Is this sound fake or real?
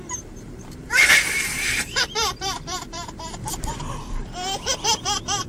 fake